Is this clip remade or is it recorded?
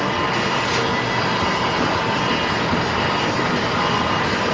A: recorded